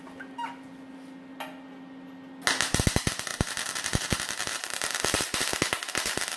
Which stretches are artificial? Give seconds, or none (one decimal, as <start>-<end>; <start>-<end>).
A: 3.3-5.4